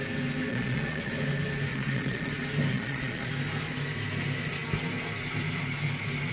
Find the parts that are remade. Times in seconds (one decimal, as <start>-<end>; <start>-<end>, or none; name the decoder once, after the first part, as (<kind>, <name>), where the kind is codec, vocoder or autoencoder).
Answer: 0.5-1.1 (vocoder, Vocos); 1.7-2.3; 2.7-3.3